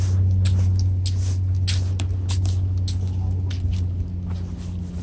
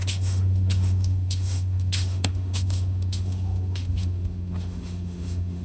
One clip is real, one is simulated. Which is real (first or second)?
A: first